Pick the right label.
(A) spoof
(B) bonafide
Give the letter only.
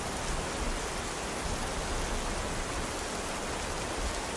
B